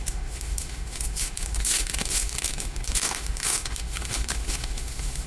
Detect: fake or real fake